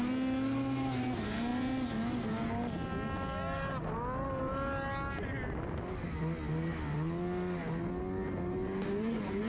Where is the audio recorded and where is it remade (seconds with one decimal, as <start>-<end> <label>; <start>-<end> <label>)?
0.0-9.5 recorded